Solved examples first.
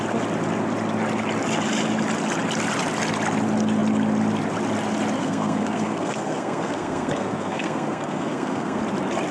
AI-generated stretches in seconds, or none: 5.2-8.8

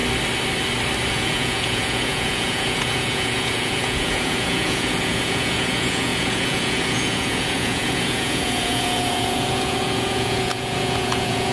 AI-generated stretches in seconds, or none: 1.1-11.5

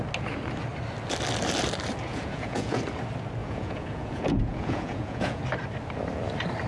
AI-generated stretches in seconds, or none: 2.1-2.8; 3.4-5.4

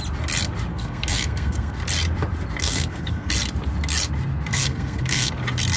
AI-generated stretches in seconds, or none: 0.7-1.8; 2.6-3.3; 4.5-5.3